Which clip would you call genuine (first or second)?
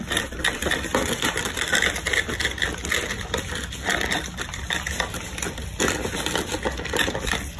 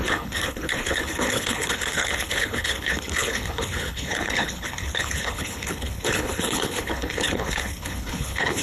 first